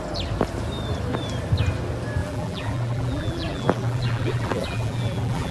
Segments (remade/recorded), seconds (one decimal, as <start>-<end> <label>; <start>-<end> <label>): 0.0-2.2 recorded; 2.2-5.5 remade